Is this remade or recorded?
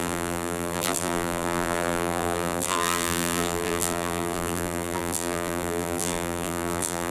remade